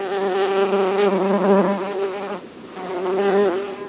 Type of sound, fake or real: real